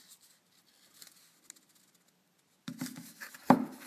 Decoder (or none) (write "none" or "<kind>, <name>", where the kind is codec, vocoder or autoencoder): none